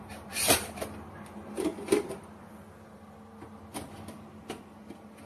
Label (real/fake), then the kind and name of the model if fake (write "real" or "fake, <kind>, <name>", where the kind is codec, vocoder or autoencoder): real